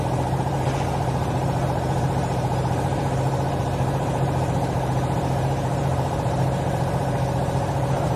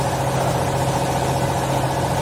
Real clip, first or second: second